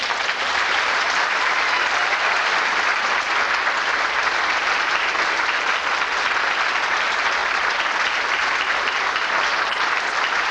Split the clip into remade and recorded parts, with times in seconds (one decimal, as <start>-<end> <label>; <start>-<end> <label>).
0.0-10.5 recorded